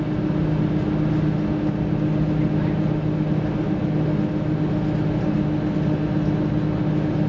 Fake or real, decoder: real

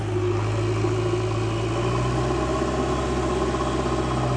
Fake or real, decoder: real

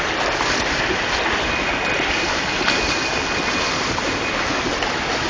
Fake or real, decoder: real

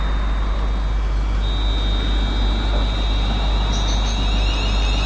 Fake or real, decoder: real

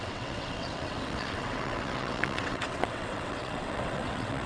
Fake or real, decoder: fake, vocoder, WaveNeXt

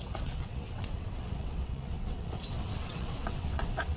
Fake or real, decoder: fake, vocoder, WaveNeXt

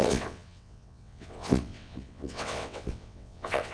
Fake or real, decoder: fake, vocoder, WaveNeXt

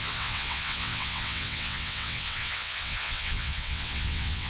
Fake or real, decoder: fake, vocoder, WaveNeXt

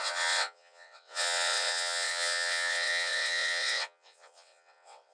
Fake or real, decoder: fake, vocoder, WaveNeXt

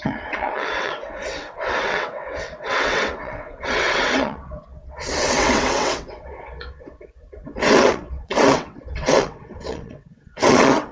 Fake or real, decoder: fake, vocoder, WaveNeXt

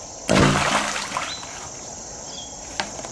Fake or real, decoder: real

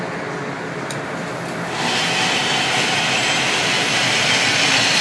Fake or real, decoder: real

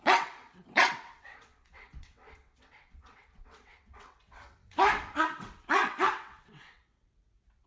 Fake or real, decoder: fake, vocoder, WaveNeXt